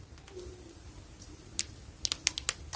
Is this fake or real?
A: real